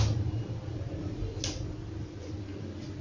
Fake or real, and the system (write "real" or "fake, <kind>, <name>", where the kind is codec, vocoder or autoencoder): real